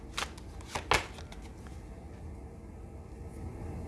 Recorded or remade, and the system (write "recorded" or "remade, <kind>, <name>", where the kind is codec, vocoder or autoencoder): recorded